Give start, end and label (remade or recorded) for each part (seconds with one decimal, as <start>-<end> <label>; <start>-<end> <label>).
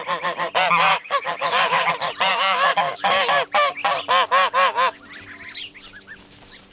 0.0-0.9 recorded; 0.9-1.9 remade; 1.9-2.3 recorded; 2.3-3.3 remade; 3.3-6.7 recorded